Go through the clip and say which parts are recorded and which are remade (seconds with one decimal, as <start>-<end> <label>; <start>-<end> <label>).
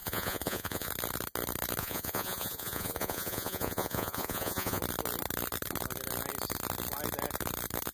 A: 0.0-0.9 remade; 0.9-1.8 recorded; 1.8-4.8 remade; 4.8-7.9 recorded